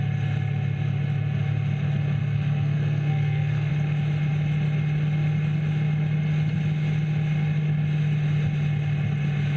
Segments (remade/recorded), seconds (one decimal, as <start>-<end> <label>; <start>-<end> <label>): 0.0-2.2 recorded; 2.2-3.7 remade; 3.7-9.6 recorded